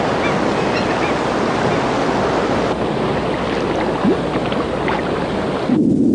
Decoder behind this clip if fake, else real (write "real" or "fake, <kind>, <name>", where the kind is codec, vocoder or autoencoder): real